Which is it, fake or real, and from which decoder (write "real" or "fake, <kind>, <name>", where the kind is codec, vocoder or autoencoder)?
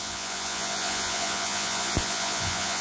fake, vocoder, Vocos